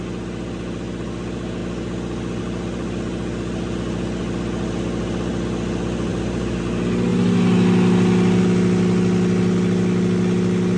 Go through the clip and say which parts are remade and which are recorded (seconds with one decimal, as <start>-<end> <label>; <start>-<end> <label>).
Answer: 0.0-6.1 recorded; 6.1-6.6 remade; 6.6-10.8 recorded